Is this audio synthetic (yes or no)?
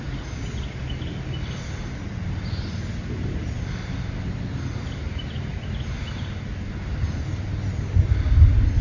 no